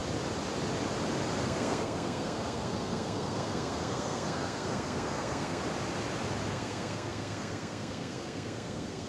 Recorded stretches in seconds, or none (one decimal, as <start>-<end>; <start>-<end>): 0.0-1.4; 5.6-6.5